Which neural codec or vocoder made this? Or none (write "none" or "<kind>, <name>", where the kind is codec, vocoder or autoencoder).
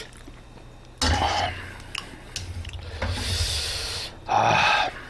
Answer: none